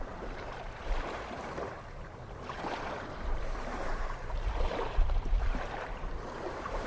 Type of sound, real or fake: fake